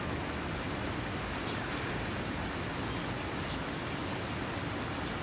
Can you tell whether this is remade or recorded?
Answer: recorded